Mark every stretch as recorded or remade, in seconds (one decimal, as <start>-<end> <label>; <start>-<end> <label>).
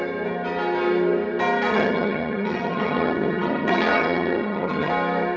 0.0-1.7 recorded; 1.7-4.9 remade; 4.9-5.4 recorded